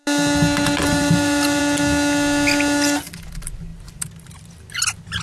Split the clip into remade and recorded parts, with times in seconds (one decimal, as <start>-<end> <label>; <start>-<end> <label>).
0.0-0.8 recorded; 0.8-1.6 remade; 1.6-5.2 recorded